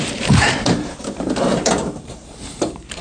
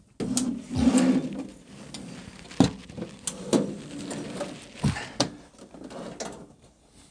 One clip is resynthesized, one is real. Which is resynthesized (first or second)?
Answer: first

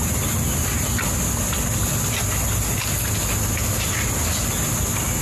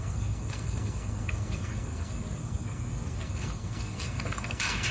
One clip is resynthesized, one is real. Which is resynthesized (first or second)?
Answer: second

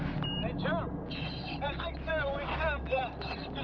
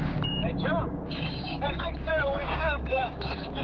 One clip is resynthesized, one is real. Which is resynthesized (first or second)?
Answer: second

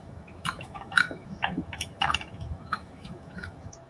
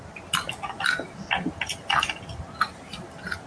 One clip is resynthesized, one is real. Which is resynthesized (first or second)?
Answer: first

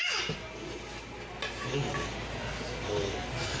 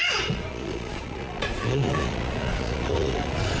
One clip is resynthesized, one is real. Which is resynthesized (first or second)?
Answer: second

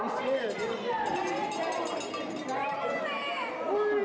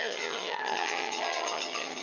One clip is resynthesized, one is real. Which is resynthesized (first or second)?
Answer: second